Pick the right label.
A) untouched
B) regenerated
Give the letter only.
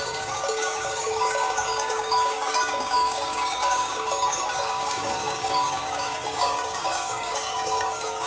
B